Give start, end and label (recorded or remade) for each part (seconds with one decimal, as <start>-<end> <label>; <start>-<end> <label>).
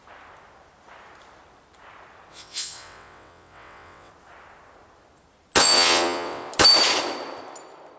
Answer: 0.0-2.3 recorded; 2.3-4.1 remade; 4.1-5.6 recorded; 5.6-6.5 remade; 6.5-8.0 recorded